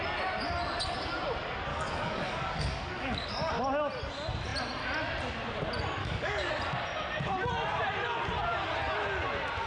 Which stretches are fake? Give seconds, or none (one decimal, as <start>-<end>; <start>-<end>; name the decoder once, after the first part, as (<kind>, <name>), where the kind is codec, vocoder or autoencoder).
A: 1.7-3.5 (codec, DAC); 6.0-6.5